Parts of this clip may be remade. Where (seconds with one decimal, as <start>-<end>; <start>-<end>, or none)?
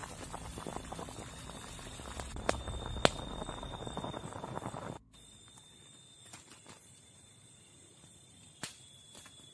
none